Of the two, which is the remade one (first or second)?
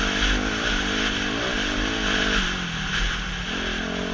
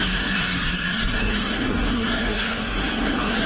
second